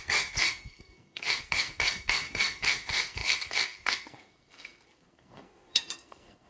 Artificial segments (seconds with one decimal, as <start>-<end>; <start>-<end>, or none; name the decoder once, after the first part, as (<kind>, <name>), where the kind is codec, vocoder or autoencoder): 0.0-6.5 (codec, SNAC)